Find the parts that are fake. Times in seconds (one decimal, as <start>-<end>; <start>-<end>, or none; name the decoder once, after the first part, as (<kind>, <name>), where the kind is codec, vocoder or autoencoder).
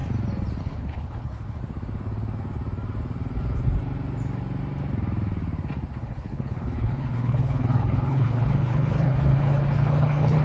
0.6-1.6 (codec, HILCodec); 6.0-10.4